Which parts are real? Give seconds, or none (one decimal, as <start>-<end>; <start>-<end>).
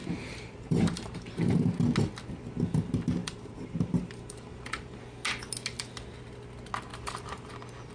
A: 1.3-3.2; 5.0-6.9; 7.5-7.9